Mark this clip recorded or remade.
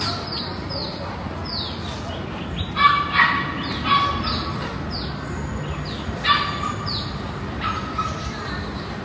recorded